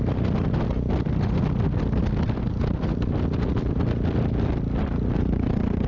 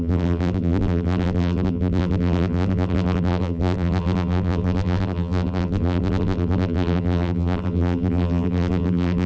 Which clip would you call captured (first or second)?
first